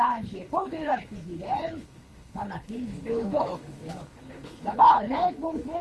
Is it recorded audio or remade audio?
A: remade